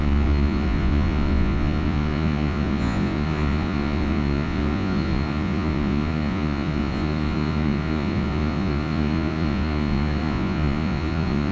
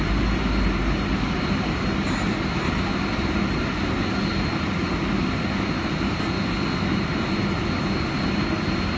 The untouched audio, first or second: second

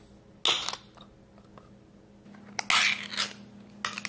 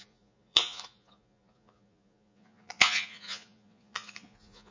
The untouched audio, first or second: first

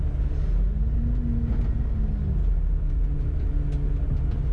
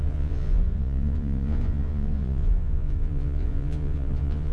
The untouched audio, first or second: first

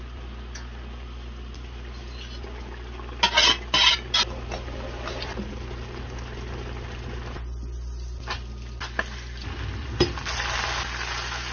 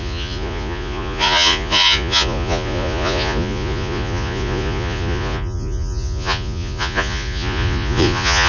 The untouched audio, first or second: first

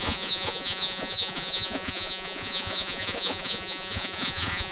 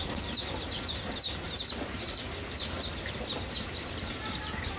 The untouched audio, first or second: second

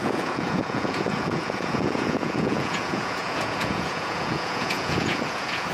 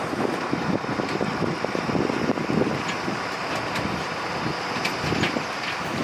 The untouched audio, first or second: second